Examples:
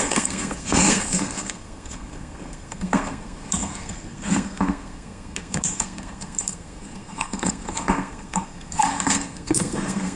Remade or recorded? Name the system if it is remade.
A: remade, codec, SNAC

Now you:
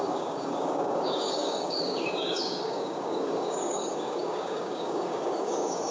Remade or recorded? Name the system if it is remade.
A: remade, codec, DAC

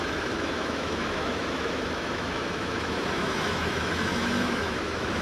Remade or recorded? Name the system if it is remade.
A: remade, autoencoder, DAC-VAE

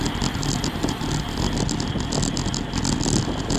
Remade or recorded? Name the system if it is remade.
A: recorded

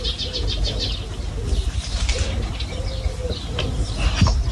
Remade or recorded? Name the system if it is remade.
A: recorded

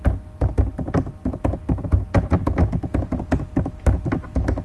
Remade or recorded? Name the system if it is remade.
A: recorded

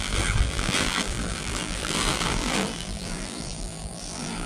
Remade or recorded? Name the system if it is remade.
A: remade, vocoder, BigVGAN v2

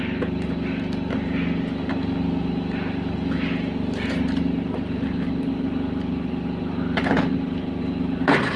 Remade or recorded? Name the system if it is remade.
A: recorded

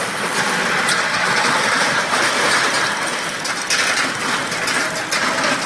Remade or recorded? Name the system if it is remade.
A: recorded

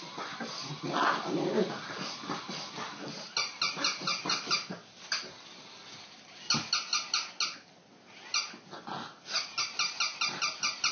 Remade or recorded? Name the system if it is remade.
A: recorded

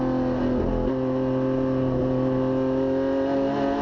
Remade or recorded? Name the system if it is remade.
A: recorded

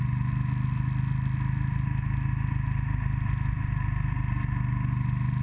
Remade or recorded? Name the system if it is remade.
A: recorded